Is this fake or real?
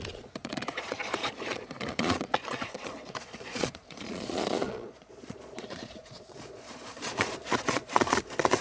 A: fake